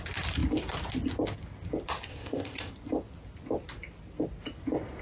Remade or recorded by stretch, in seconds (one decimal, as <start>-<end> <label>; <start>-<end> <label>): 0.0-2.1 recorded; 2.1-2.7 remade; 2.7-5.0 recorded